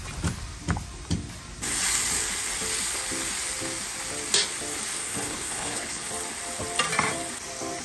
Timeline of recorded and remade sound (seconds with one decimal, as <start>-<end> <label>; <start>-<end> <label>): 0.0-5.0 recorded; 5.0-6.1 remade; 6.1-7.8 recorded